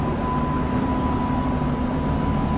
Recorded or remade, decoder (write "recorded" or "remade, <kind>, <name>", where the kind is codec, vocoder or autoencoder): recorded